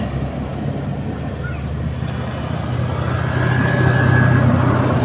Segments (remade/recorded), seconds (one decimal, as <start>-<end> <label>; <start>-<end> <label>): 0.0-5.0 recorded